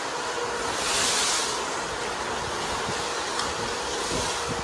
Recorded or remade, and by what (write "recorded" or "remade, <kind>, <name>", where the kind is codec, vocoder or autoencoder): recorded